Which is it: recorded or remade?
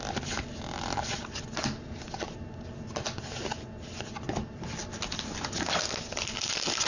recorded